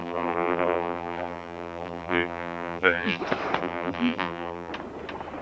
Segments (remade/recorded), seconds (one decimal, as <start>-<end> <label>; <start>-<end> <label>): 0.0-3.2 remade; 3.2-3.6 recorded; 3.6-4.7 remade; 4.7-5.4 recorded